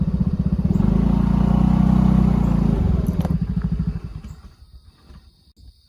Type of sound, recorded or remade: recorded